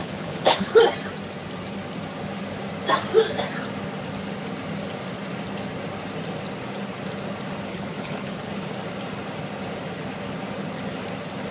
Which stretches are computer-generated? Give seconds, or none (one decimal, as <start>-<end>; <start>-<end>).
0.0-0.8; 7.7-8.5